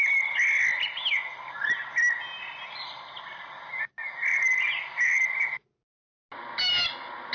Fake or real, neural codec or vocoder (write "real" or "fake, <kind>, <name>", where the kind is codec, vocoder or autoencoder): real